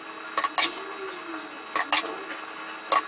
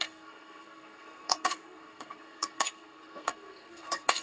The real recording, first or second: first